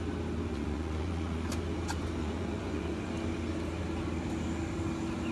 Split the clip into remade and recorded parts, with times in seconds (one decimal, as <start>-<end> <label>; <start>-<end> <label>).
0.0-0.5 recorded; 0.5-1.5 remade; 1.5-2.2 recorded; 2.2-3.1 remade; 3.1-5.3 recorded